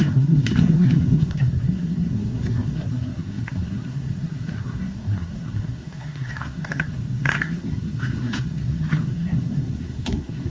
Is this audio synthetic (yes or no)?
yes